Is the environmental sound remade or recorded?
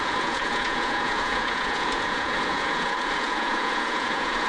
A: remade